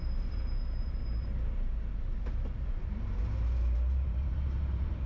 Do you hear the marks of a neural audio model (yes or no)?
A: yes